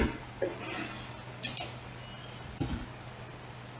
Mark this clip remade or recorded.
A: recorded